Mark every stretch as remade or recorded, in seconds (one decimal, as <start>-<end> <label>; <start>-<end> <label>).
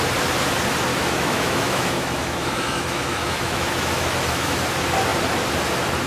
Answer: 0.0-0.9 recorded; 0.9-4.6 remade; 4.6-6.1 recorded